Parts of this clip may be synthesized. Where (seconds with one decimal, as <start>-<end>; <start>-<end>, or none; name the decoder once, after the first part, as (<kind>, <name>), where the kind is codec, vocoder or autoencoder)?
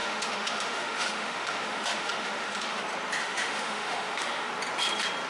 0.0-2.8 (autoencoder, DAC-VAE); 3.2-4.5